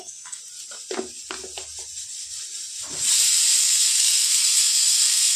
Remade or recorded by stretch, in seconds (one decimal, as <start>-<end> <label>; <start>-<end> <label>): 0.0-0.4 remade; 0.4-3.6 recorded; 3.6-5.4 remade